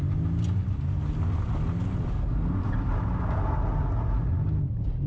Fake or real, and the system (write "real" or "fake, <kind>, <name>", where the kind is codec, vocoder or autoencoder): real